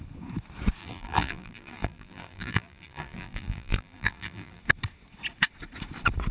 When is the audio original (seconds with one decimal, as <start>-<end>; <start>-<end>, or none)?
0.0-0.8; 4.6-6.3